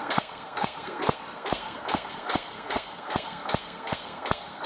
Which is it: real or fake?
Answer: fake